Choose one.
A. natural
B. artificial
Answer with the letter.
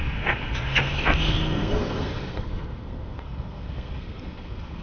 B